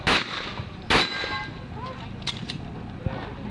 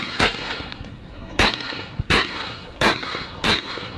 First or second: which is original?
first